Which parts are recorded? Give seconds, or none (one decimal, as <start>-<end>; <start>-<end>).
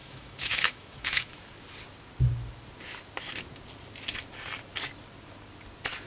1.4-6.1